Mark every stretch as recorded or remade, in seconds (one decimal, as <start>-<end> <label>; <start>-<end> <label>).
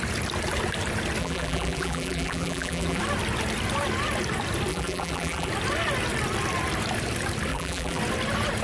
0.0-1.2 recorded; 1.2-3.0 remade; 3.0-4.7 recorded; 4.7-5.5 remade; 5.5-7.5 recorded; 7.5-8.0 remade; 8.0-8.6 recorded